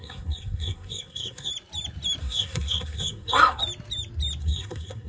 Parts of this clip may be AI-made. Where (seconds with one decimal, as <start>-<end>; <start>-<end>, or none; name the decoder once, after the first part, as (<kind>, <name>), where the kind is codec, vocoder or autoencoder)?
0.0-1.5 (codec, SNAC); 2.2-3.6; 4.4-5.1